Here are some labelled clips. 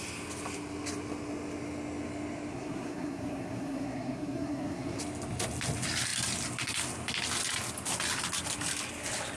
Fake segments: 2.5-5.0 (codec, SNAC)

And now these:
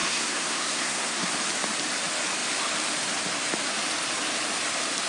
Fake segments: 0.0-1.3 (codec, SNAC)

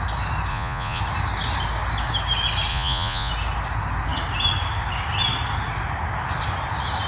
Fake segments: 0.5-1.0 (vocoder, Vocos); 2.7-3.3